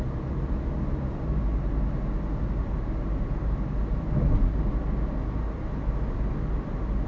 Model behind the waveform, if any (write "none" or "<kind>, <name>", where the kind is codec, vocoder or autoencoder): none